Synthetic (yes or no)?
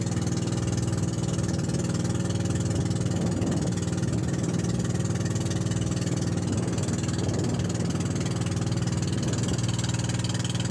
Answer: no